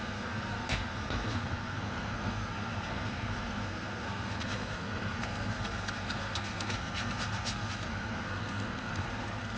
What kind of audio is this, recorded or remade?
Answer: remade